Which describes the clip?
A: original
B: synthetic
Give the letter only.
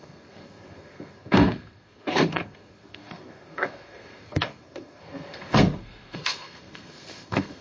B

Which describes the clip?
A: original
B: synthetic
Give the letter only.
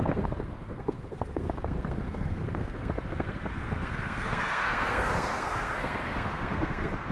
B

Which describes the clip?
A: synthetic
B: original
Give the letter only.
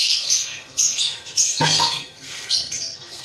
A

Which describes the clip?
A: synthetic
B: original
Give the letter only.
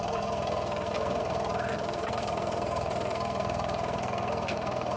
A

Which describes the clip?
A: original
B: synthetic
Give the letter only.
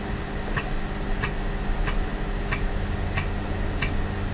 A